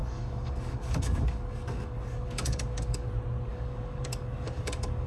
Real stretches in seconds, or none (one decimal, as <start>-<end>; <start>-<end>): 3.1-3.5